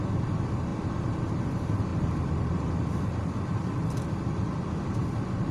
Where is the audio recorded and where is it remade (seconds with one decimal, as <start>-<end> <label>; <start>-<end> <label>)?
0.0-0.7 recorded; 0.7-1.4 remade; 1.4-1.9 recorded; 1.9-5.5 remade